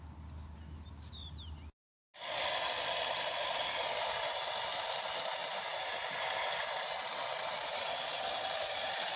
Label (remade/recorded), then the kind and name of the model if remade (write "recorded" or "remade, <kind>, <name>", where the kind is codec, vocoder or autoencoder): recorded